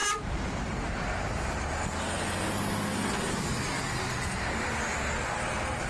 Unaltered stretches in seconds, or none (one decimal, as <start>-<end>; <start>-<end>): 1.3-5.9